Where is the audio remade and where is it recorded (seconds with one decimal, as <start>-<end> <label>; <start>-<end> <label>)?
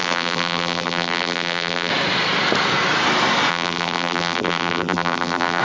0.0-1.9 remade; 1.9-3.5 recorded; 3.5-5.6 remade